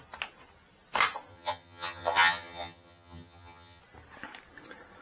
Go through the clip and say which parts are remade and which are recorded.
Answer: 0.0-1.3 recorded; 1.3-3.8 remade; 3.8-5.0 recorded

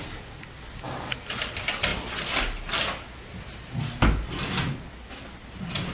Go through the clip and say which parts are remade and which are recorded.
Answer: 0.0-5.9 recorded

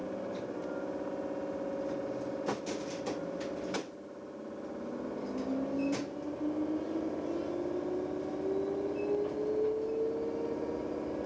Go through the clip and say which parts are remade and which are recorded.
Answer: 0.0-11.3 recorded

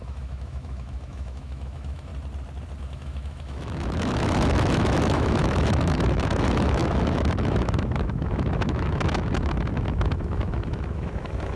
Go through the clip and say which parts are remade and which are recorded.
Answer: 0.0-2.1 remade; 2.1-2.8 recorded; 2.8-11.6 remade